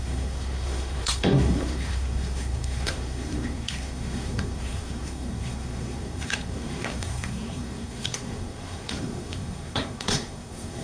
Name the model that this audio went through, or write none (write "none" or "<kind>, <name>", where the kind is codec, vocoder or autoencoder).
codec, SNAC